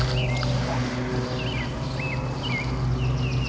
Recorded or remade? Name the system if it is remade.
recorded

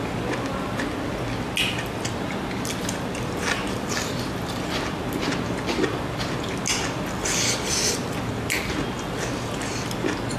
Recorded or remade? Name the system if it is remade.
recorded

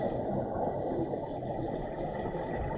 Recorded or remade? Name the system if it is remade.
recorded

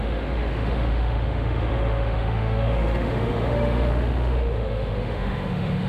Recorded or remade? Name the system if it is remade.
remade, autoencoder, DAC-VAE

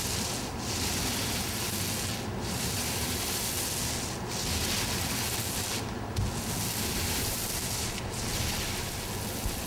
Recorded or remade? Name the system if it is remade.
recorded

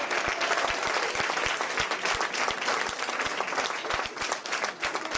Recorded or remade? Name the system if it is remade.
recorded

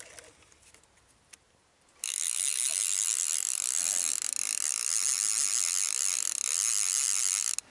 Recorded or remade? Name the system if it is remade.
recorded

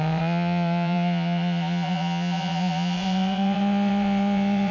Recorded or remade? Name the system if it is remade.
remade, vocoder, Vocos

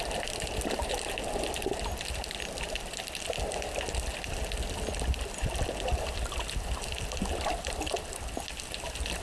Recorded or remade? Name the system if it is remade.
recorded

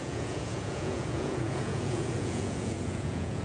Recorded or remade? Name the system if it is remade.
remade, vocoder, Vocos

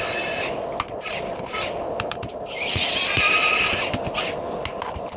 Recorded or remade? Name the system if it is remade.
recorded